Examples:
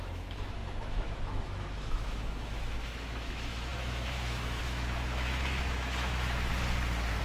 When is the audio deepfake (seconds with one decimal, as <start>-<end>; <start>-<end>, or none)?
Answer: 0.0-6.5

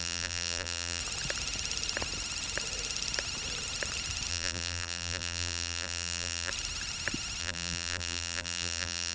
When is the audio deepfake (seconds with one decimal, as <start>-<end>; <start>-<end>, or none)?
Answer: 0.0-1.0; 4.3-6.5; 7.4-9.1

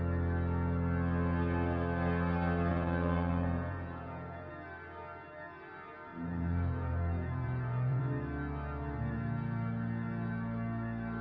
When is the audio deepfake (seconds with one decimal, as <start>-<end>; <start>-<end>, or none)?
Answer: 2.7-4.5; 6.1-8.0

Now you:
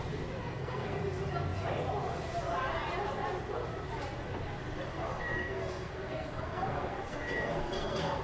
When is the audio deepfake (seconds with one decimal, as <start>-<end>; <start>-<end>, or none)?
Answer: 0.4-1.0; 4.9-8.2